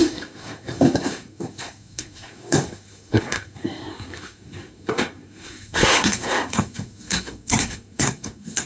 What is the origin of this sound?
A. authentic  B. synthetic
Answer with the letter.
B